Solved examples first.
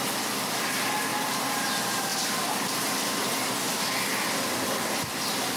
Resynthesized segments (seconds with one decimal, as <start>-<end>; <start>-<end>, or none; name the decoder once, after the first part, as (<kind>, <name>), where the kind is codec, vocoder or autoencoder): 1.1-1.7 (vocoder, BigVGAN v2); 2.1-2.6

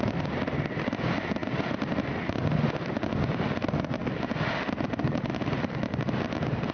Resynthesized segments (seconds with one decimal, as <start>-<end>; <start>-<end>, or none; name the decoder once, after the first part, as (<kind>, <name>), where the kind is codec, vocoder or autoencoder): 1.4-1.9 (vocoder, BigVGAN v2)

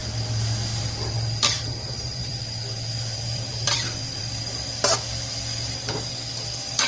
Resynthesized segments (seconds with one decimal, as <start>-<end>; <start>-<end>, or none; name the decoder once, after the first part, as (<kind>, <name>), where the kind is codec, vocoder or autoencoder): 2.2-4.4 (vocoder, BigVGAN v2)

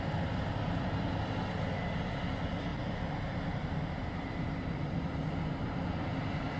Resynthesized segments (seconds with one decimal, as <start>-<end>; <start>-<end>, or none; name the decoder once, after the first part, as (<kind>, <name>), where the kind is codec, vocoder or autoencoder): 0.0-6.6 (vocoder, BigVGAN v2)

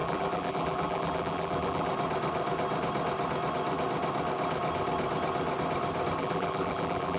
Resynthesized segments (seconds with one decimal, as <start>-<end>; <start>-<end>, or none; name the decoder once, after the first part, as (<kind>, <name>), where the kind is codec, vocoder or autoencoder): 0.0-1.9 (vocoder, BigVGAN v2); 6.2-7.2

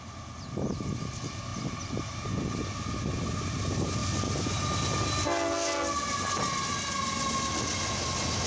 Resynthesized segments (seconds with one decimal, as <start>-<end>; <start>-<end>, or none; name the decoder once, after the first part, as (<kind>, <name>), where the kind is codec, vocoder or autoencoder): none